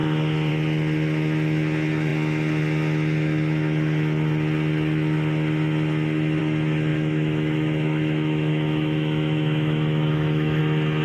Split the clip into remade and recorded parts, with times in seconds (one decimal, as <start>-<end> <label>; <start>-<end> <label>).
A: 0.0-6.9 recorded; 6.9-10.6 remade; 10.6-11.0 recorded